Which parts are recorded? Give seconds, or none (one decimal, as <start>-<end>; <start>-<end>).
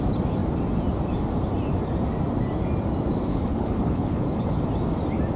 0.0-3.3; 4.6-5.4